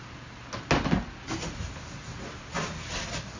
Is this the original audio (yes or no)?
yes